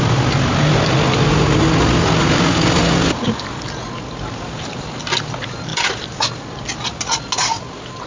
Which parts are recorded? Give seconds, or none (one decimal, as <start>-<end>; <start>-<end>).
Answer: 0.0-8.1